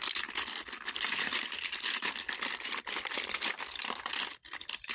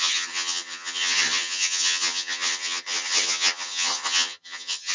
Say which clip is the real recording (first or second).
first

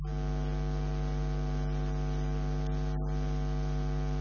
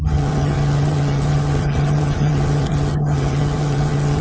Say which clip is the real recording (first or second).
first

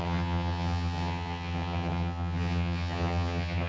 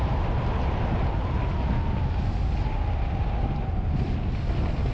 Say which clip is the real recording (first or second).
second